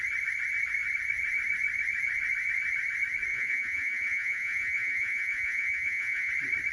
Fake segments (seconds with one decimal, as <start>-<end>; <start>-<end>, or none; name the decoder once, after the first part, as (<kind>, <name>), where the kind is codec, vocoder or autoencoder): 3.3-6.3 (vocoder, Vocos)